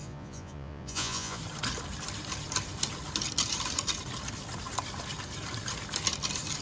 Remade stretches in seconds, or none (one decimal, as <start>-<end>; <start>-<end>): 0.0-1.4